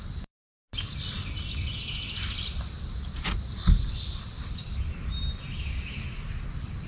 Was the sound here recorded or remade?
recorded